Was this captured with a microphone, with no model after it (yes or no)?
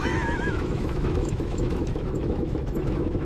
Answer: no